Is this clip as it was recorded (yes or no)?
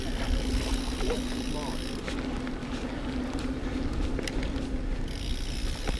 yes